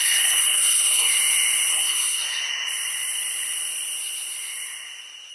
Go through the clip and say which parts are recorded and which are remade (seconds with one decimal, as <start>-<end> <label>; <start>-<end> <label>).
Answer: 0.0-1.1 remade; 1.1-1.7 recorded; 1.7-2.2 remade; 2.2-5.3 recorded